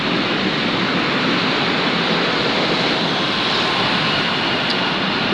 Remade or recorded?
recorded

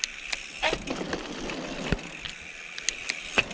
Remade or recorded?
recorded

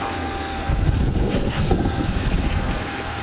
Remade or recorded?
remade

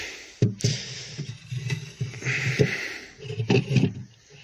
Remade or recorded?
recorded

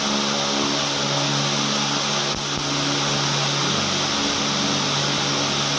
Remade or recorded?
recorded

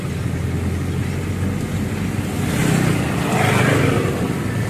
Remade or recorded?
recorded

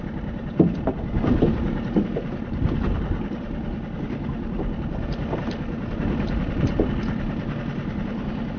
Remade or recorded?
recorded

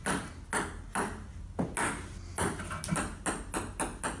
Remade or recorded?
recorded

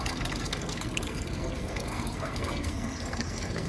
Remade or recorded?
remade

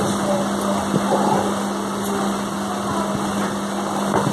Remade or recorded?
recorded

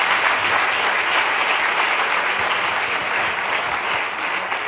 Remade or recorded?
recorded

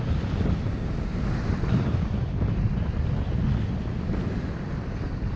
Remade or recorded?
recorded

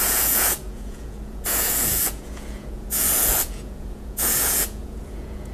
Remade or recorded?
remade